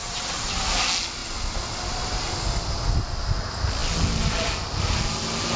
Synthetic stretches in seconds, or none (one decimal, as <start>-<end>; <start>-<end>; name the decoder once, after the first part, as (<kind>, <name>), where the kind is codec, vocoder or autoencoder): 0.0-0.5 (vocoder, WaveNeXt)